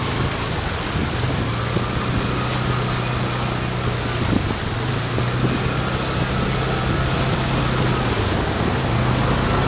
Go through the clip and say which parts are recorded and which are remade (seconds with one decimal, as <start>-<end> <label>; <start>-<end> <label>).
0.0-9.7 recorded